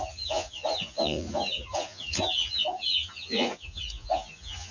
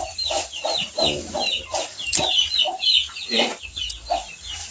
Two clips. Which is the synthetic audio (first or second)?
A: first